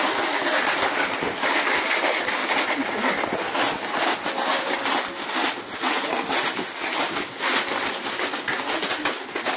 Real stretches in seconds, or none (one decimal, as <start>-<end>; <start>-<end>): 0.0-9.6